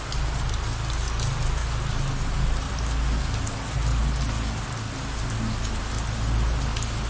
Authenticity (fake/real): real